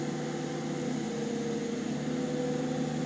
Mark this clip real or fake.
real